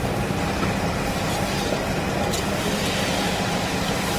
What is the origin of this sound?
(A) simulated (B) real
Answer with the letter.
B